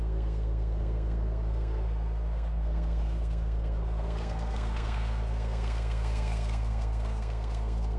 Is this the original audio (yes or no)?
no